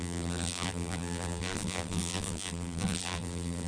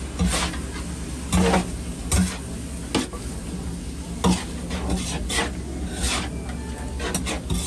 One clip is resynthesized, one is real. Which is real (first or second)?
second